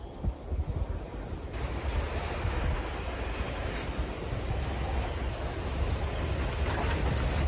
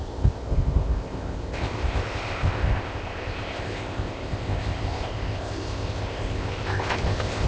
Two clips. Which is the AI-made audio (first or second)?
second